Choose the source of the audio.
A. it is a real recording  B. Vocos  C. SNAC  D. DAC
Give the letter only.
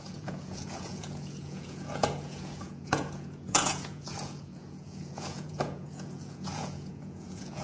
B